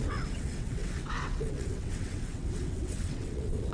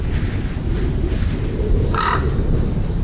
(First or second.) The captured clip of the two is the second